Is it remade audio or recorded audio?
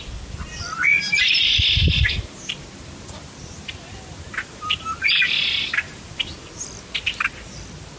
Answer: recorded